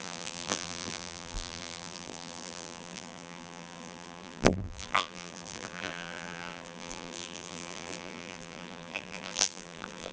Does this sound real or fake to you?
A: fake